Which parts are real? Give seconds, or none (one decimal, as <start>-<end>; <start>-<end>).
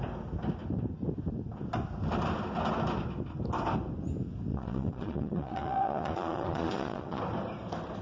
0.0-4.5; 7.2-8.0